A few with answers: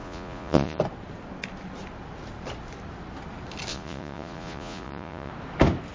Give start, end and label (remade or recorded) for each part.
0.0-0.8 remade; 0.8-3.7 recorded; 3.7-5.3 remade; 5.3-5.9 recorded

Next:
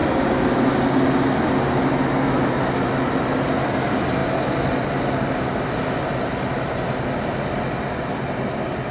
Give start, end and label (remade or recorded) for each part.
0.0-8.9 recorded

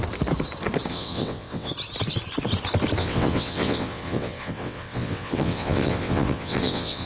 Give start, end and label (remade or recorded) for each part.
0.0-0.9 recorded; 0.9-1.7 remade; 1.7-3.0 recorded; 3.0-7.1 remade

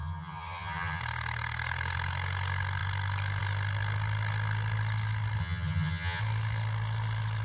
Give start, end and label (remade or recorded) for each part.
0.0-1.0 remade; 1.0-5.4 recorded; 5.4-6.2 remade; 6.2-7.4 recorded

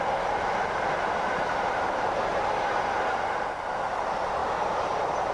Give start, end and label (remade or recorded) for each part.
0.0-2.3 remade; 2.3-3.9 recorded; 3.9-4.4 remade; 4.4-5.3 recorded

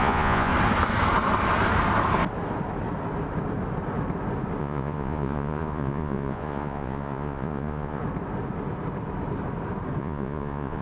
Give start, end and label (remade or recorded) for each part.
0.0-0.5 remade; 0.5-4.6 recorded; 4.6-8.0 remade; 8.0-10.0 recorded; 10.0-10.8 remade

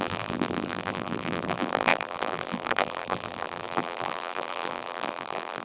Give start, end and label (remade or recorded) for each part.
0.0-5.6 remade

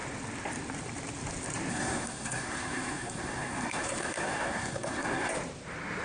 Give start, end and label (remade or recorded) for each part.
0.0-1.7 recorded; 1.7-5.3 remade; 5.3-6.0 recorded